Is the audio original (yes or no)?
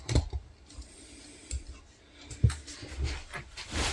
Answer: yes